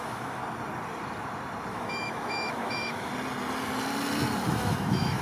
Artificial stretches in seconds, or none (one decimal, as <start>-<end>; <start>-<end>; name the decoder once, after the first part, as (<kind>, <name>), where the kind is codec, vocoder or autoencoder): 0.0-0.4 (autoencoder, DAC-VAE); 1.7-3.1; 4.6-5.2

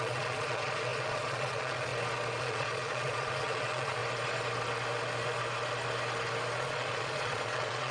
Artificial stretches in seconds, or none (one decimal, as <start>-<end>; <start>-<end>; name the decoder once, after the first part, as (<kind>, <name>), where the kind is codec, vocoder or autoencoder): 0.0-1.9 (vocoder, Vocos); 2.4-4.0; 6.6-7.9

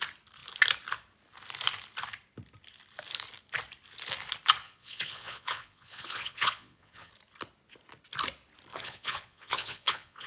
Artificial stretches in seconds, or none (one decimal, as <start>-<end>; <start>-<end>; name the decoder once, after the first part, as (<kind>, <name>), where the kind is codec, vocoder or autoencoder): 4.6-7.1 (vocoder, Vocos); 8.7-10.3

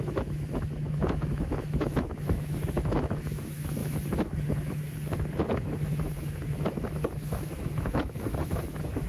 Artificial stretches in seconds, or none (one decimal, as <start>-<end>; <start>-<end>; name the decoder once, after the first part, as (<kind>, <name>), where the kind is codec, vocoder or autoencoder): 0.0-9.1 (autoencoder, DAC-VAE)

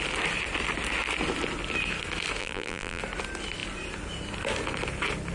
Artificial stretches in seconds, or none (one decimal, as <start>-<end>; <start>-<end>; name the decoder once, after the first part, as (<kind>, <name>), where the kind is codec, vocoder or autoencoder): 2.4-3.0 (vocoder, BigVGAN v2)